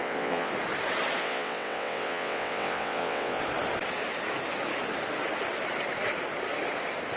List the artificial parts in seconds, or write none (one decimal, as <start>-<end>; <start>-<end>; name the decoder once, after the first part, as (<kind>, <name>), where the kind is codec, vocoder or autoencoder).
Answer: 0.0-0.5 (vocoder, WaveNeXt); 1.2-3.4